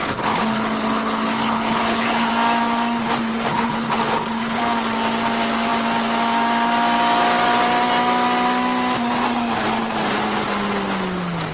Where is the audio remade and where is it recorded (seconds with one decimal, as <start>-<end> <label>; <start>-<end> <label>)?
0.0-2.3 remade; 2.3-3.5 recorded; 3.5-4.6 remade; 4.6-11.5 recorded